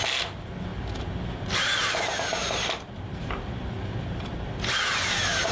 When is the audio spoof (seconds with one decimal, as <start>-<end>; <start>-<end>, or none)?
none